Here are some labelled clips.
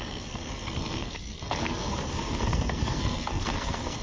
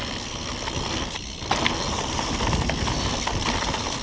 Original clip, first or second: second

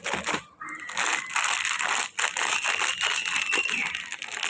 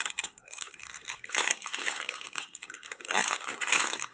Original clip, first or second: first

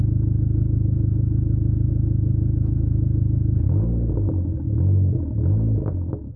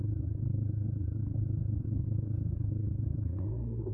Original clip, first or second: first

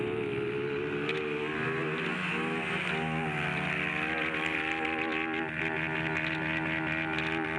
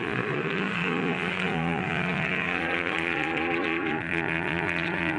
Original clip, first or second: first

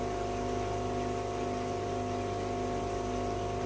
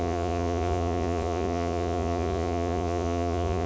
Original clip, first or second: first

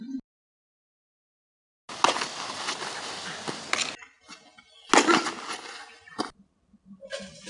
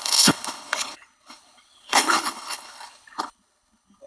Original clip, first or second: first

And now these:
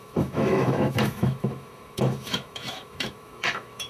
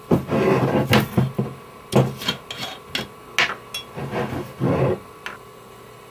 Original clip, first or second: second